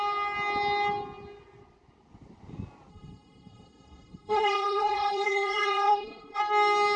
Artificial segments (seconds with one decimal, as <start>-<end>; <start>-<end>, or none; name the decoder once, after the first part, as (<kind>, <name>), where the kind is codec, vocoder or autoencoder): 2.9-6.4 (codec, SNAC)